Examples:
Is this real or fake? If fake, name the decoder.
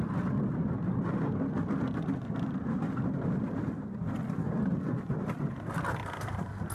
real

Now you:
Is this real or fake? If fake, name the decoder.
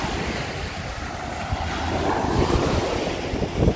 real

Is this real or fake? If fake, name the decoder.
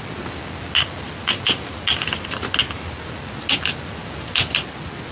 real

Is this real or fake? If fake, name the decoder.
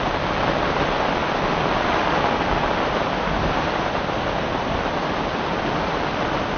real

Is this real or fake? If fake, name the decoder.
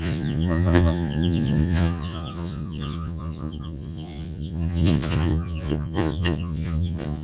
fake, vocoder, Vocos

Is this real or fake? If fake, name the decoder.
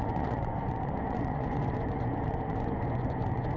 fake, vocoder, Vocos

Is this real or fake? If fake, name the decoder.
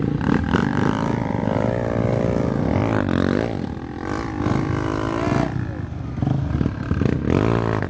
real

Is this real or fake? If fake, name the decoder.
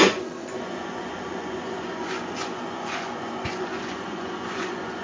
fake, vocoder, Vocos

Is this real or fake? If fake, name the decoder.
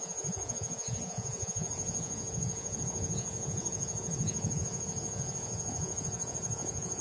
fake, vocoder, Vocos